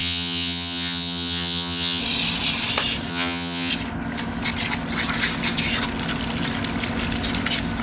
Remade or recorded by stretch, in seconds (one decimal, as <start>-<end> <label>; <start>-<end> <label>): 0.0-2.0 remade; 2.0-3.1 recorded; 3.1-3.7 remade; 3.7-7.8 recorded